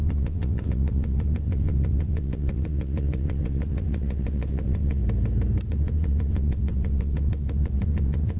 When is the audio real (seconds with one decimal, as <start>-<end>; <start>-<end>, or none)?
5.0-5.7